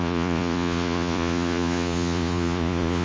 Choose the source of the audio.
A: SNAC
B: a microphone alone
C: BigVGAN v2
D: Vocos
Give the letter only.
D